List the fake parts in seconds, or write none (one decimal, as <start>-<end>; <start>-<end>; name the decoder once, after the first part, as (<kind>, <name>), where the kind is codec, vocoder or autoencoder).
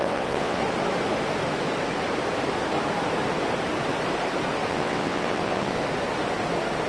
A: 0.0-0.6 (vocoder, WaveNeXt); 4.7-5.8